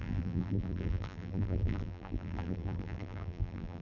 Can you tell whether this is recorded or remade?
remade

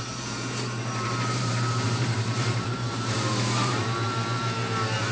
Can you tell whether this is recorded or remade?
remade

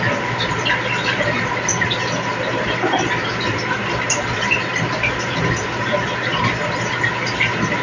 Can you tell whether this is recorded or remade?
recorded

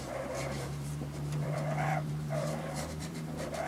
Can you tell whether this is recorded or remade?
remade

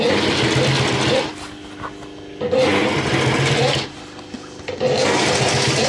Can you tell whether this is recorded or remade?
recorded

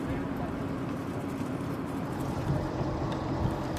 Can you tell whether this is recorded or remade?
remade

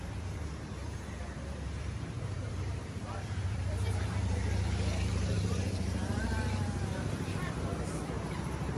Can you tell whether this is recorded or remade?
remade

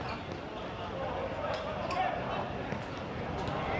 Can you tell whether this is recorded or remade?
recorded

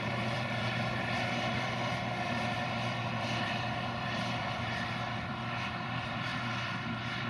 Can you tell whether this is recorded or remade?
remade